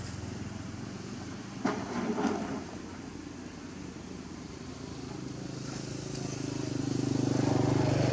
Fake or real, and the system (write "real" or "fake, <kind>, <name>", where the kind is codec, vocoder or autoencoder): real